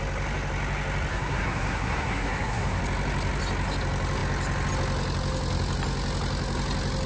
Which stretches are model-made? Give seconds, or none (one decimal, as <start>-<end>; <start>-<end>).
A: 1.1-2.8